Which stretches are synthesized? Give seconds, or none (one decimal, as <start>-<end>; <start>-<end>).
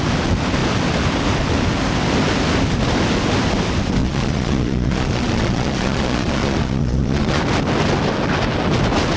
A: 4.0-7.4